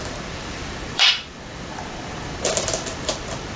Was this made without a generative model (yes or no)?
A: no